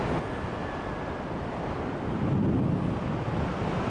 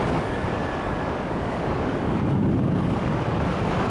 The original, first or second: first